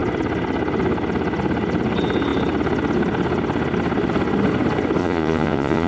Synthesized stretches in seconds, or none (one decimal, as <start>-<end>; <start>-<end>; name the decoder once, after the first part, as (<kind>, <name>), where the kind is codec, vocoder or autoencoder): 5.0-5.9 (vocoder, Vocos)